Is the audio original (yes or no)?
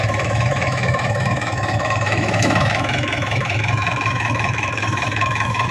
no